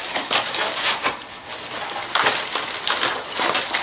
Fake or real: real